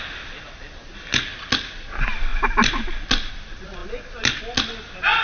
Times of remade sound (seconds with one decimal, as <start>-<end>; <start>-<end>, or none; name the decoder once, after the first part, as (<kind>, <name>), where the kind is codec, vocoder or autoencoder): none